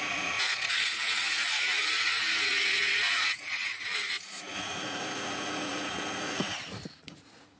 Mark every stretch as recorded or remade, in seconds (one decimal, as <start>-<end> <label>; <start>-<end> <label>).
0.0-7.6 remade